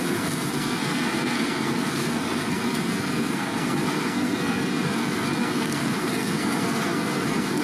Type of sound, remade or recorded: remade